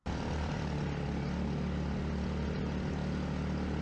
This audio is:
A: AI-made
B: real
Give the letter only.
B